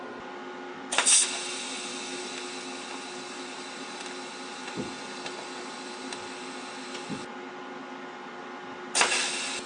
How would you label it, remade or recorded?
recorded